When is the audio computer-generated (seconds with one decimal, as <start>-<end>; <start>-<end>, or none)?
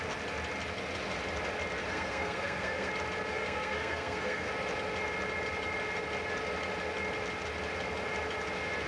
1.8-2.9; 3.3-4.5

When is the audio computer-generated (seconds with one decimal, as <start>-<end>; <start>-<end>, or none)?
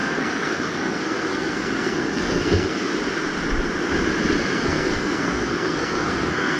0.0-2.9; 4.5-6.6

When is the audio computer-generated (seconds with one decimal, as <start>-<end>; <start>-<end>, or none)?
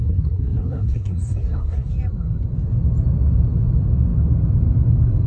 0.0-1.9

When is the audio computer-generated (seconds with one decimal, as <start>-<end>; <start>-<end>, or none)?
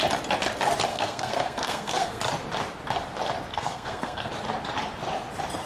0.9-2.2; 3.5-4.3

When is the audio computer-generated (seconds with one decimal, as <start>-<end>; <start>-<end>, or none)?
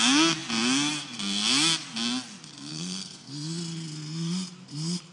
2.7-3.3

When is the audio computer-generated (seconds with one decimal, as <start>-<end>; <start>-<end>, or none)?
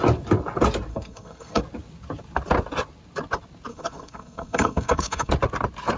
0.9-1.6; 3.7-5.3